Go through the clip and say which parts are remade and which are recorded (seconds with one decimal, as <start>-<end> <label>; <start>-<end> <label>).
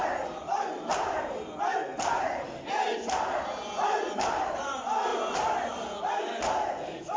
0.0-1.9 recorded; 1.9-2.4 remade; 2.4-7.2 recorded